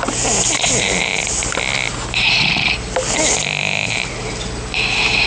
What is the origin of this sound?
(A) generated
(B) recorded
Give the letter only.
B